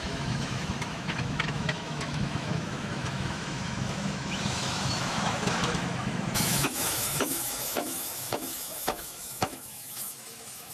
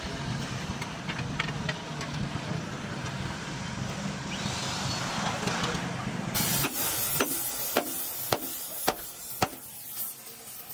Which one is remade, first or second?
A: first